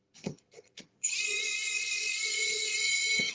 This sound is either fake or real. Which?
fake